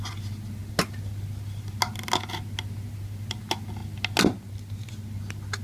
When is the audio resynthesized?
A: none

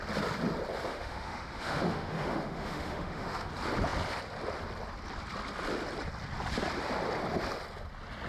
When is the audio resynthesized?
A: 0.9-3.5 (autoencoder, DAC-VAE)

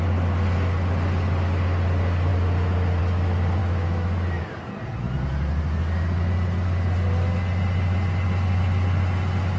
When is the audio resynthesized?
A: 3.6-4.6 (autoencoder, DAC-VAE)

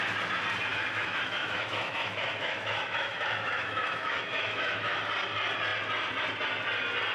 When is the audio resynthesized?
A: 0.7-5.0 (autoencoder, DAC-VAE)